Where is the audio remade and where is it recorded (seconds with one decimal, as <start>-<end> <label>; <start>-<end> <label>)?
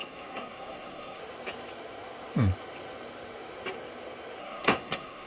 0.0-1.2 remade; 1.2-4.4 recorded; 4.4-5.3 remade